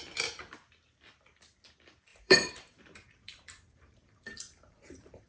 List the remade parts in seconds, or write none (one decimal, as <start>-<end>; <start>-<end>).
2.1-5.3